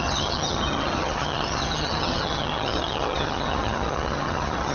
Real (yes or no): no